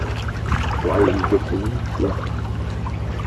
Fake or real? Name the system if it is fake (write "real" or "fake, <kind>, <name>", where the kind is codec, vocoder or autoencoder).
real